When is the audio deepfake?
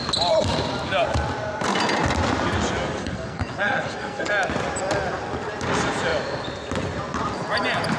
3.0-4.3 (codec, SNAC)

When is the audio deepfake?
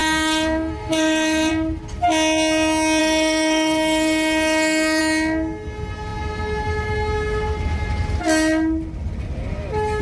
0.0-1.5 (codec, SNAC); 3.0-5.0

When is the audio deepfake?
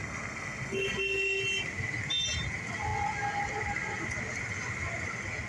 0.0-1.4 (codec, SNAC)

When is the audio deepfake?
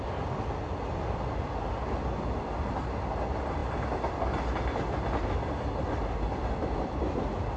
none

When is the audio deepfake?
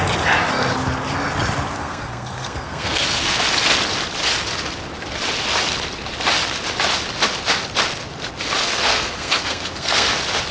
1.8-3.4 (codec, SNAC); 8.6-10.1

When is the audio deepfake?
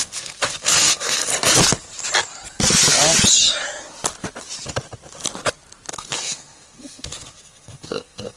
0.0-1.3 (codec, SNAC); 5.9-8.4